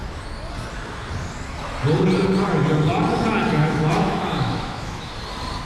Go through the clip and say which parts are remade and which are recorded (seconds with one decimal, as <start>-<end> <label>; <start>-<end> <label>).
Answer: 0.0-3.6 recorded; 3.6-5.1 remade; 5.1-5.7 recorded